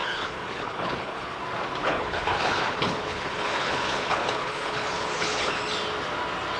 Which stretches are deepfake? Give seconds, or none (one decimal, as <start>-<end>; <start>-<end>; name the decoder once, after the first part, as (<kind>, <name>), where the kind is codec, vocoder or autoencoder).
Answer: 0.0-1.4 (codec, HILCodec); 1.8-5.6